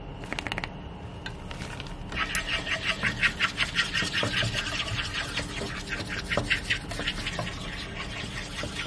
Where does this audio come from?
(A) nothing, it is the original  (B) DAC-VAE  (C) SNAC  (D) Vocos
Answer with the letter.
A